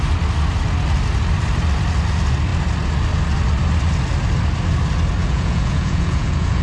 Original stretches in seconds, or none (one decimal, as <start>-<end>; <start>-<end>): 0.0-5.2